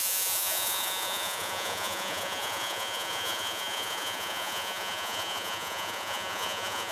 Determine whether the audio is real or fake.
fake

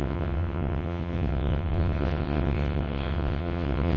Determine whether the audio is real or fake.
fake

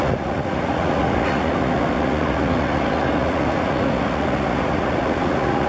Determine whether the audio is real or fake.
fake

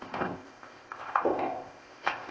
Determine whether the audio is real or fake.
fake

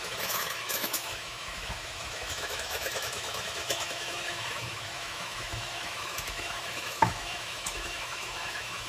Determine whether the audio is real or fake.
fake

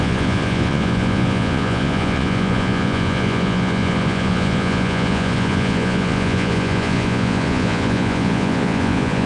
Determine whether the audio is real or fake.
fake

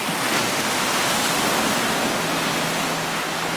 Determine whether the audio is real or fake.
real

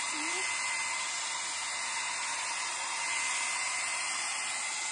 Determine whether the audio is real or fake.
real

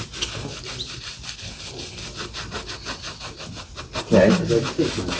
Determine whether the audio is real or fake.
real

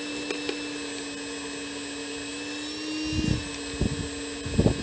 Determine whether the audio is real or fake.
real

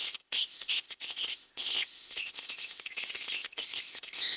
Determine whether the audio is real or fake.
fake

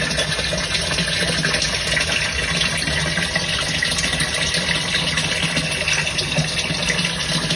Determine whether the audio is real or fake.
real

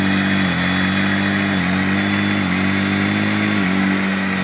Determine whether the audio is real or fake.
real